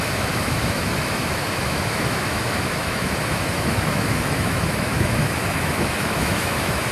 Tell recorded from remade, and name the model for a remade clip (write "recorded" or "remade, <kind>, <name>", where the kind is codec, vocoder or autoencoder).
remade, autoencoder, DAC-VAE